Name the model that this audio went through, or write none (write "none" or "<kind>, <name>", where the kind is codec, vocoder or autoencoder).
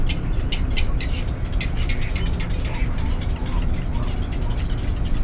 none